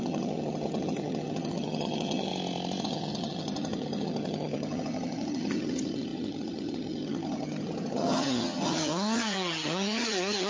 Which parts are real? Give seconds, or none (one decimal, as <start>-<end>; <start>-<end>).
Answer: 2.3-2.8